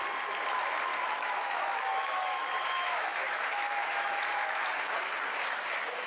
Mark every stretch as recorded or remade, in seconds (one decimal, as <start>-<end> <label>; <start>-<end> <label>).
0.0-0.9 recorded; 0.9-4.2 remade; 4.2-6.1 recorded